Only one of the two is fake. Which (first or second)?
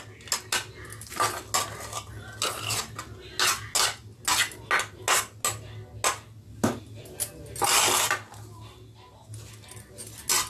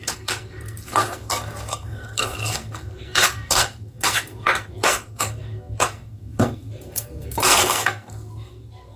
second